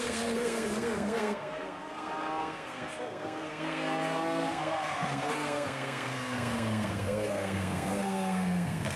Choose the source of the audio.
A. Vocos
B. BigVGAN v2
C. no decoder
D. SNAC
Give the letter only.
D